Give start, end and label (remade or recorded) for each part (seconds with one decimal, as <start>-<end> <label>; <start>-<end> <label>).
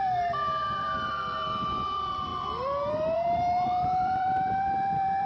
0.0-5.3 remade